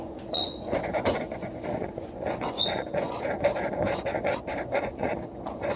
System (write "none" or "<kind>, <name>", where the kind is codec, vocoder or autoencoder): vocoder, Vocos